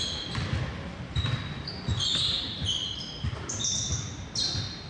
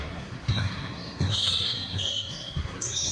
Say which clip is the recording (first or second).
first